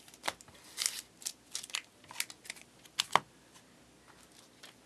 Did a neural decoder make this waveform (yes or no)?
no